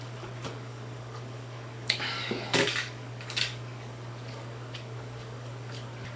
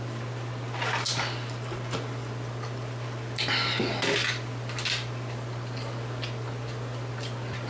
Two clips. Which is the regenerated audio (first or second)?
first